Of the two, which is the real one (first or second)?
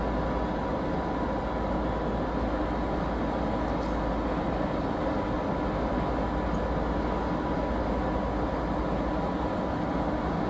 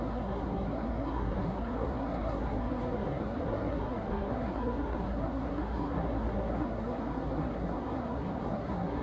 first